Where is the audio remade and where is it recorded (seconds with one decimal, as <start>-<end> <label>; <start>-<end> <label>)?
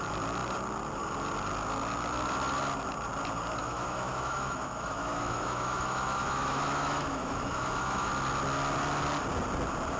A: 0.0-3.6 recorded; 3.6-8.1 remade; 8.1-10.0 recorded